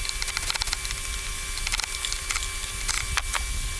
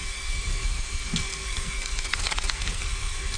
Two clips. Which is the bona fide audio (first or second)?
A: first